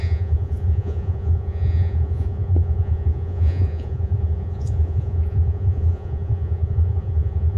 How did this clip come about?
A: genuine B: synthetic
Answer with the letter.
B